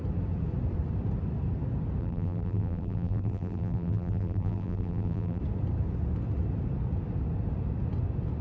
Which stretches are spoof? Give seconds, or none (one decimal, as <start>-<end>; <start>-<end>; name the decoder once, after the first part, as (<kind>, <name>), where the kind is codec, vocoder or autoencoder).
2.0-5.4 (vocoder, BigVGAN v2)